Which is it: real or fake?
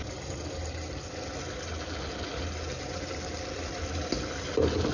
real